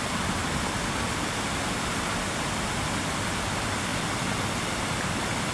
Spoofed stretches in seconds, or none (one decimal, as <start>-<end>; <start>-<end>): none